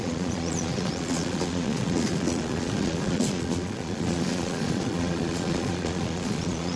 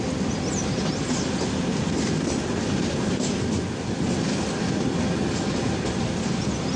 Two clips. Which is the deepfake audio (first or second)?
first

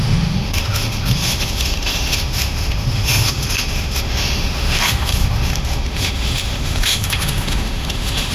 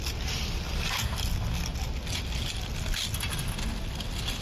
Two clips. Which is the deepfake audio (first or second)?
first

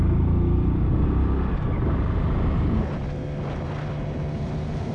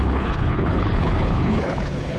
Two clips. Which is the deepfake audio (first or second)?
second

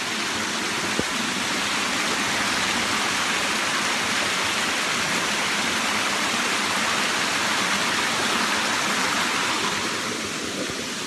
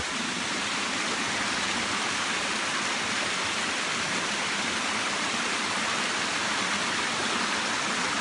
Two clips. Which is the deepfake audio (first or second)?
second